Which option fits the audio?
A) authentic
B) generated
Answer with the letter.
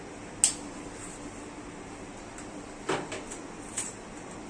A